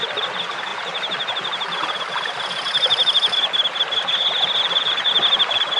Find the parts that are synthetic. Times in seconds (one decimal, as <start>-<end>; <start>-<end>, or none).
none